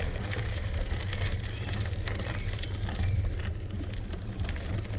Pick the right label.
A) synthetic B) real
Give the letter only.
B